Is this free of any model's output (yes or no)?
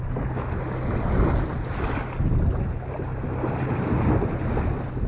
yes